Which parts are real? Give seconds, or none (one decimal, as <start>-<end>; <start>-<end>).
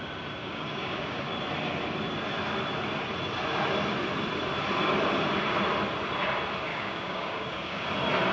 0.0-0.4; 1.3-6.7; 7.9-8.3